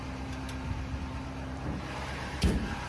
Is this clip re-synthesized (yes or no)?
yes